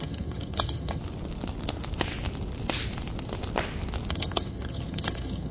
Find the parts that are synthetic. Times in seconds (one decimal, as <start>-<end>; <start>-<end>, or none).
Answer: 0.0-1.0; 4.1-5.5